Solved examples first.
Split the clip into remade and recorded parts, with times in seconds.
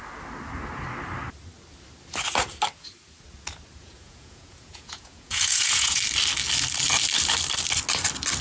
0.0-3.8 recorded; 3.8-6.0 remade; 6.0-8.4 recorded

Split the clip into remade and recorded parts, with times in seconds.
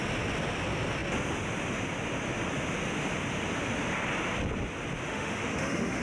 0.0-5.1 recorded; 5.1-6.0 remade